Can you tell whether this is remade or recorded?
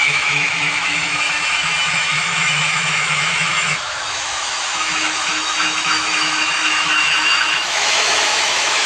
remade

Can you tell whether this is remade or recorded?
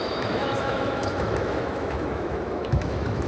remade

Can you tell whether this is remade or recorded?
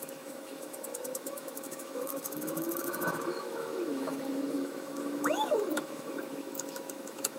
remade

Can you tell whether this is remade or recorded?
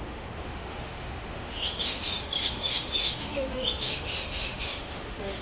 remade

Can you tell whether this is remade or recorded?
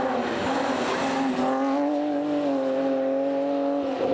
recorded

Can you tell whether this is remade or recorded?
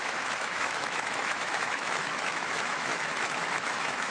remade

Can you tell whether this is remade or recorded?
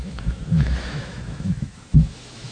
remade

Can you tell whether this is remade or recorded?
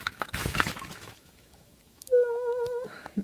remade